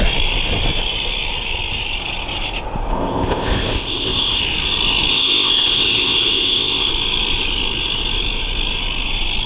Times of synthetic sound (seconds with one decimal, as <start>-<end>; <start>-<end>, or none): 2.9-4.4; 5.1-6.9